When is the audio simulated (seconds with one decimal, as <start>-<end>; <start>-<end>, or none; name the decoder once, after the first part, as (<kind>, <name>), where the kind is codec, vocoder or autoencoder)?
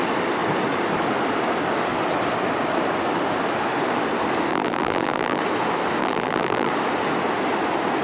4.5-5.4 (vocoder, BigVGAN v2); 6.0-6.7